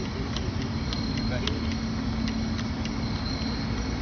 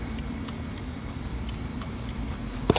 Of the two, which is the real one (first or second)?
first